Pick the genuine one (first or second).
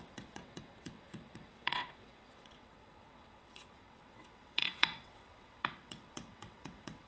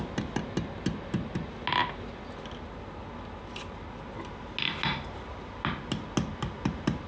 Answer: second